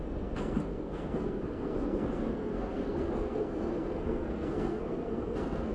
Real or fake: fake